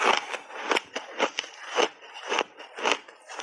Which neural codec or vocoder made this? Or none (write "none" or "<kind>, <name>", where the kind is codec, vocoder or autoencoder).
none